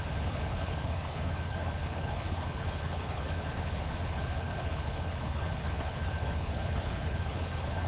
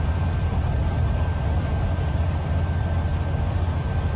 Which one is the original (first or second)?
second